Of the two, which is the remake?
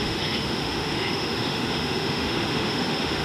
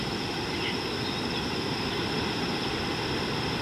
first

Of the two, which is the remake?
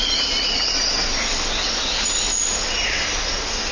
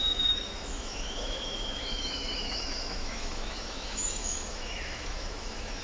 second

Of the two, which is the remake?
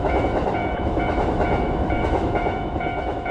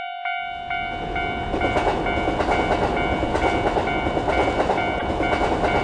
first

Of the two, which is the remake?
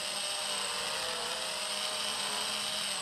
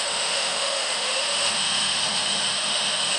second